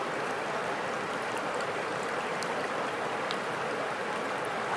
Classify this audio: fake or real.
real